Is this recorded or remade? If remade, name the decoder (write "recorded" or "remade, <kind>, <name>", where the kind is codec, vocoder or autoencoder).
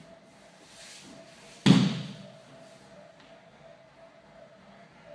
recorded